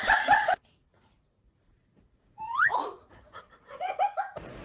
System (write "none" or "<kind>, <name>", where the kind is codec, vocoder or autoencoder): vocoder, Vocos